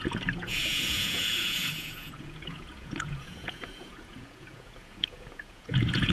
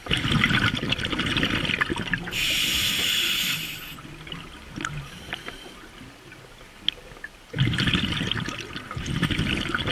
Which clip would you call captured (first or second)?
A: second